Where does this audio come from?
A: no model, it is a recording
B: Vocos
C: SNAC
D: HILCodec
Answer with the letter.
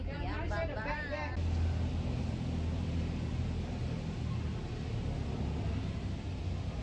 A